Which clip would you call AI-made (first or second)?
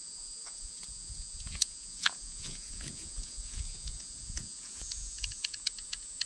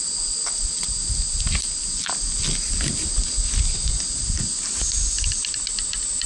first